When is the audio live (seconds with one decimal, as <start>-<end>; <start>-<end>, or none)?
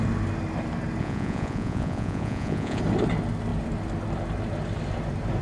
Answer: 0.0-1.0; 2.8-5.4